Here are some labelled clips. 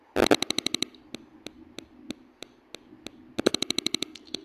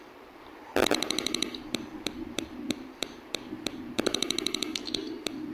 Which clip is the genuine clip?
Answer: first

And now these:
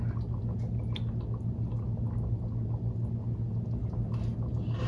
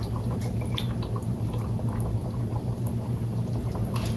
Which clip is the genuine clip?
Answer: first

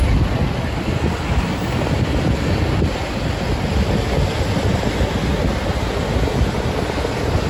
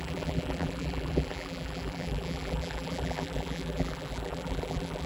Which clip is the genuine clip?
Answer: first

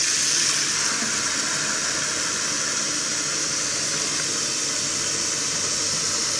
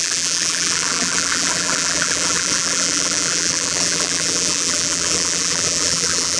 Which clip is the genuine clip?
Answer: first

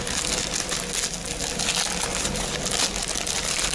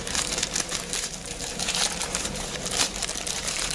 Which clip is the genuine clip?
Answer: first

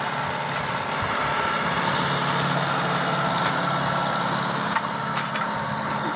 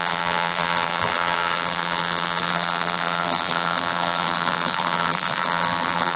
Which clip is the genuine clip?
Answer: first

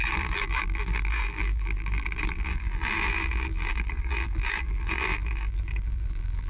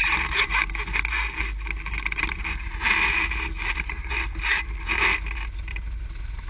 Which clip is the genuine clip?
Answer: second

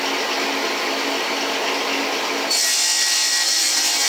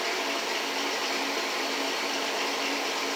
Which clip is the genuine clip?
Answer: first